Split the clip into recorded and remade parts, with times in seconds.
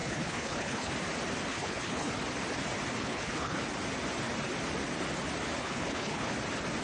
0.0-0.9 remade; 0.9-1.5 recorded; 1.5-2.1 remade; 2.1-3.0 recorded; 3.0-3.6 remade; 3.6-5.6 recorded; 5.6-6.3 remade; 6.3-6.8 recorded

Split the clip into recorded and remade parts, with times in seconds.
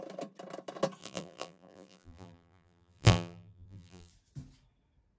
0.0-1.0 recorded; 1.0-4.1 remade; 4.1-5.2 recorded